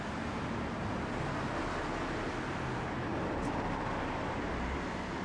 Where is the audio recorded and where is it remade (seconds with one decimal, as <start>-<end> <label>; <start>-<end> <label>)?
0.0-5.2 recorded